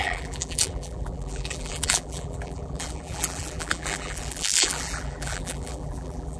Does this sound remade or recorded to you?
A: remade